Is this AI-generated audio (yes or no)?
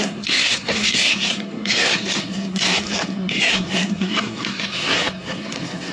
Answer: yes